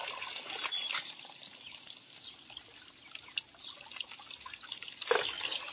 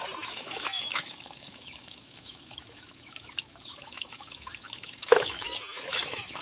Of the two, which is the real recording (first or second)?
first